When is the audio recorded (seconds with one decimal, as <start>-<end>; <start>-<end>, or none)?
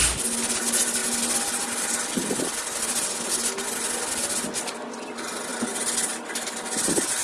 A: 0.0-7.2